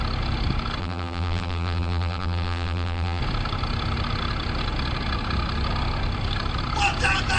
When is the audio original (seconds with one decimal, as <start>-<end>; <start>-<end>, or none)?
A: 0.0-0.8; 3.2-7.4